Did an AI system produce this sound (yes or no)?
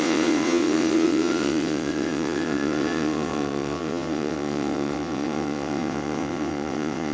yes